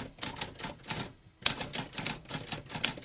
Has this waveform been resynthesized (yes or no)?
no